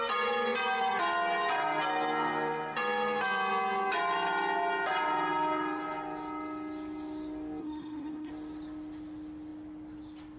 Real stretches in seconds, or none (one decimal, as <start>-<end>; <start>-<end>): 0.0-7.6; 8.3-10.4